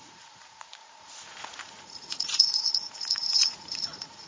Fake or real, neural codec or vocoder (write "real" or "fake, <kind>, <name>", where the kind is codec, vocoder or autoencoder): fake, vocoder, Vocos